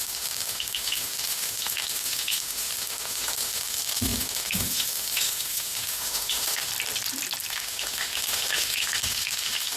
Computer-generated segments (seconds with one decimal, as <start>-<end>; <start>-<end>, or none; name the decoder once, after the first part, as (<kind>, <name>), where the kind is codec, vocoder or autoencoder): 0.0-6.7 (autoencoder, DAC-VAE); 7.5-9.8